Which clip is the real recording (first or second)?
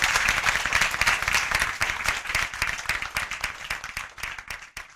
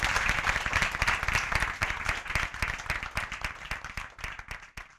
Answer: second